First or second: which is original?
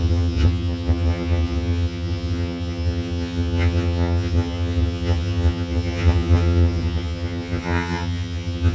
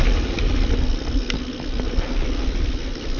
second